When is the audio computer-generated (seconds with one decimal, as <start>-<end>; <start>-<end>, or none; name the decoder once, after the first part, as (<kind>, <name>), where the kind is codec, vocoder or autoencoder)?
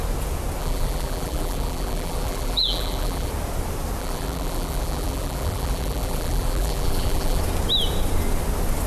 0.6-3.3 (vocoder, BigVGAN v2); 4.0-7.4